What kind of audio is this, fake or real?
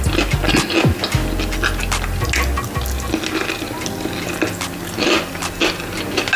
real